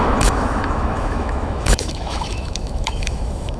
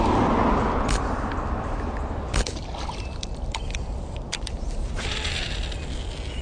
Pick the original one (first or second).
second